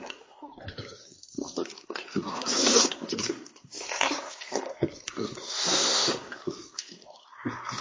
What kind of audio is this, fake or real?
fake